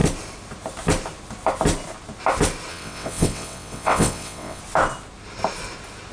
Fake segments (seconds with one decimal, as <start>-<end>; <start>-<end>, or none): 2.7-4.6